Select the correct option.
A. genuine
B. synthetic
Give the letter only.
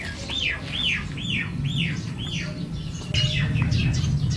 A